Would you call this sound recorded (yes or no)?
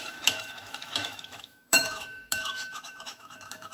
no